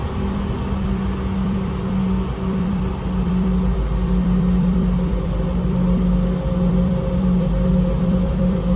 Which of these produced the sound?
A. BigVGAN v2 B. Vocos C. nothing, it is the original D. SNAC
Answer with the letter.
A